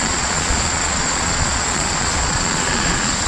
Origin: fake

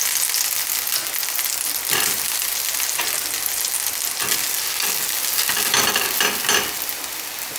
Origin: real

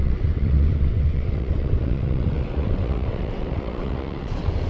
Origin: fake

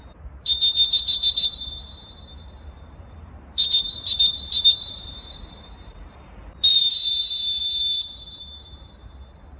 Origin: fake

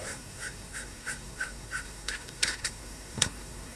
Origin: fake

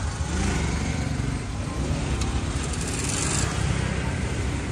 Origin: real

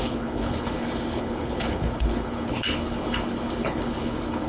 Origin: fake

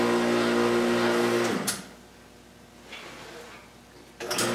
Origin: real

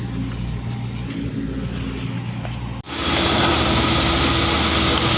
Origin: real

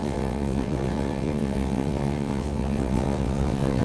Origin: fake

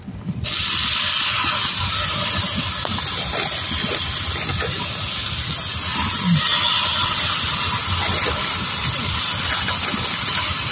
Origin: real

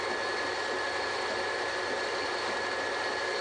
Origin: real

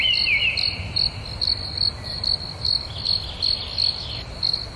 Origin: real